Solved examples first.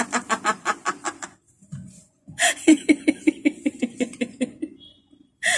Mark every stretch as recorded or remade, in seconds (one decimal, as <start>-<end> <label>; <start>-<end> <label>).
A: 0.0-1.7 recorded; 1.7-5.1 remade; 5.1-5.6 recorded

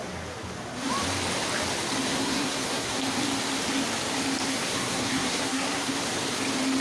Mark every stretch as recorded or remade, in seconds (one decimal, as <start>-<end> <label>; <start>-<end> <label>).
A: 0.0-2.1 recorded; 2.1-3.0 remade; 3.0-4.5 recorded; 4.5-5.9 remade; 5.9-6.8 recorded

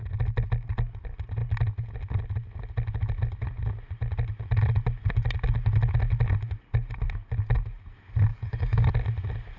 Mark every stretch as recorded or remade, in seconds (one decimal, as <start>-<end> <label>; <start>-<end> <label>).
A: 0.0-8.3 recorded; 8.3-8.9 remade; 8.9-9.6 recorded

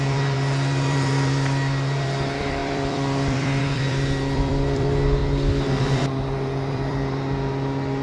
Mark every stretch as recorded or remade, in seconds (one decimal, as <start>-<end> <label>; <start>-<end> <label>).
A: 0.0-5.2 remade; 5.2-5.8 recorded; 5.8-8.0 remade

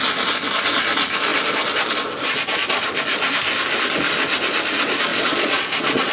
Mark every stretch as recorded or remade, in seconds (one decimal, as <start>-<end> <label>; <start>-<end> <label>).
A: 0.0-5.1 recorded; 5.1-6.1 remade

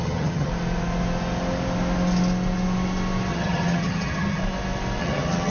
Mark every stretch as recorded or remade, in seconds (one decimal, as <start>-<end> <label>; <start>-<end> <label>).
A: 0.0-0.5 remade; 0.5-3.3 recorded; 3.3-4.4 remade; 4.4-5.0 recorded; 5.0-5.5 remade